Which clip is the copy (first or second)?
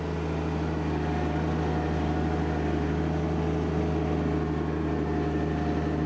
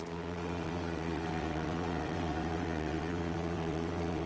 second